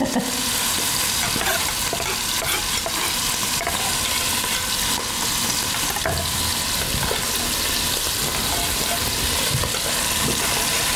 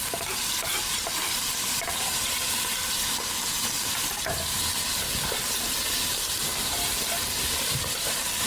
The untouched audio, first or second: first